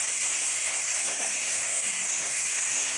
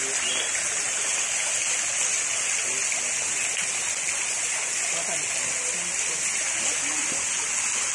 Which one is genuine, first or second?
second